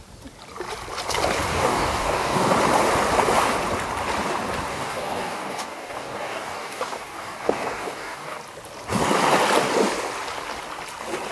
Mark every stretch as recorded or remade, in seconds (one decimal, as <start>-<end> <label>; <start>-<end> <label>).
0.0-1.5 recorded; 1.5-2.5 remade; 2.5-4.7 recorded; 4.7-8.4 remade; 8.4-11.3 recorded